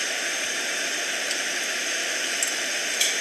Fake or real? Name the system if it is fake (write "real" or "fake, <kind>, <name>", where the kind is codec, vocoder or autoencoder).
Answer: fake, vocoder, BigVGAN v2